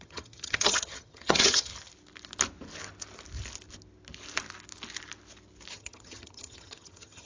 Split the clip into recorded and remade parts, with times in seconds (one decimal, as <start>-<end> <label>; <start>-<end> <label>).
0.0-1.7 remade; 1.7-5.7 recorded; 5.7-7.3 remade